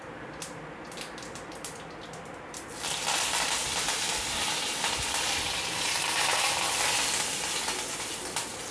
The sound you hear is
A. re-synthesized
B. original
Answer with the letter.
A